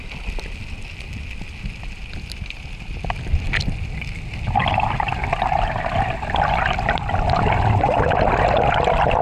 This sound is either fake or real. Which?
real